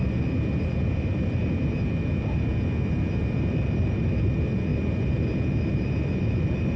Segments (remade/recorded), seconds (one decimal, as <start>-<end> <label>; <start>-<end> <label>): 0.0-6.8 recorded